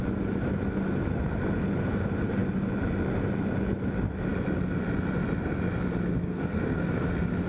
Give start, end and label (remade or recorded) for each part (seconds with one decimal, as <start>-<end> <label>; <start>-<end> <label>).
0.0-6.2 recorded; 6.2-6.9 remade; 6.9-7.5 recorded